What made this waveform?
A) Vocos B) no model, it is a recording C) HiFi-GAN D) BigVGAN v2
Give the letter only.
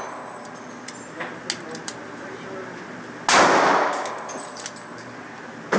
B